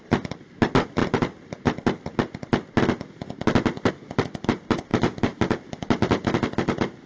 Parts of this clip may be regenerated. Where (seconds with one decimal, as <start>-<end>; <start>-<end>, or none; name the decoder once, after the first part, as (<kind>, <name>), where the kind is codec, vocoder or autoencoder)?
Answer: 4.9-6.1 (vocoder, BigVGAN v2)